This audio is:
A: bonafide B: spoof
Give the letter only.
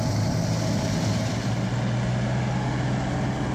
A